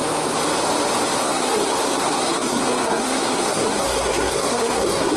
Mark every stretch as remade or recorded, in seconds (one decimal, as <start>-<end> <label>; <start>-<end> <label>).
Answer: 0.0-1.2 recorded; 1.2-5.2 remade